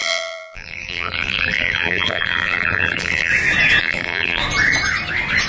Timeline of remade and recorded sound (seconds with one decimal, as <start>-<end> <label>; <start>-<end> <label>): 0.0-3.3 remade; 3.3-3.8 recorded; 3.8-4.4 remade; 4.4-5.5 recorded